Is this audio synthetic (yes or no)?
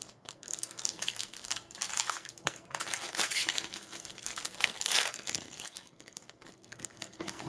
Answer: yes